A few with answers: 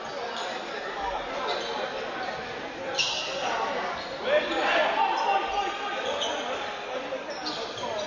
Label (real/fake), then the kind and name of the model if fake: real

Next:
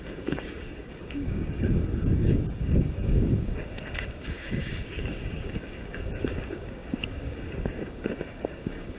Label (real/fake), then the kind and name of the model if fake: fake, codec, DAC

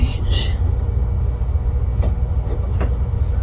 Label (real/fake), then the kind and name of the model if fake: real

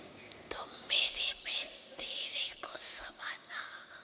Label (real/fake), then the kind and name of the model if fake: fake, codec, DAC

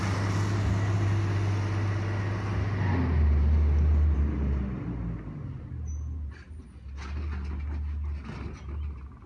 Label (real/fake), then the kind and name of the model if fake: real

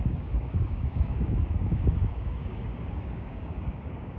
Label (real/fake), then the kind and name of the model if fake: fake, codec, DAC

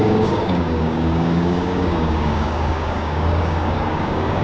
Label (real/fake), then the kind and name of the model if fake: fake, codec, DAC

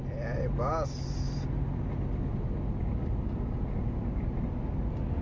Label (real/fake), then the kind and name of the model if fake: real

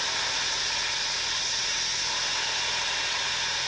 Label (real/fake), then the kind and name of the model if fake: real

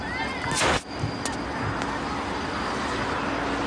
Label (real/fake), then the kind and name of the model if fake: real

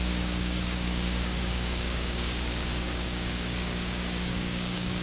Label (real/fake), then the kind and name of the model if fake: fake, codec, DAC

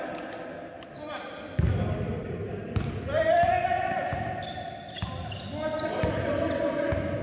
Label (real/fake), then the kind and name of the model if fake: real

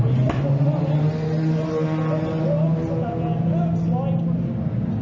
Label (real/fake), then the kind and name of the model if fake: real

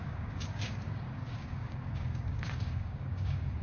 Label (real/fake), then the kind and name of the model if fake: fake, codec, DAC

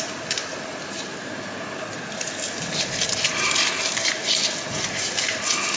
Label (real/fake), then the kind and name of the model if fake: real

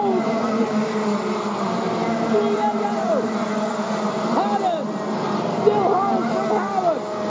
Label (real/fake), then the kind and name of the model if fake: real